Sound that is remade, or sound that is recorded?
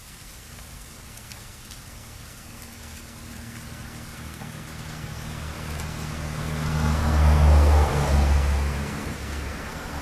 remade